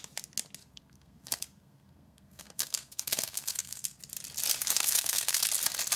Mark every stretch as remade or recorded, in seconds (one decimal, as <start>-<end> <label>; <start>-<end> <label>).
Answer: 0.0-0.6 recorded; 0.6-4.0 remade; 4.0-4.6 recorded; 4.6-5.4 remade; 5.4-6.0 recorded